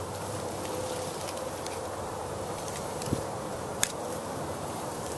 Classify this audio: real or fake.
fake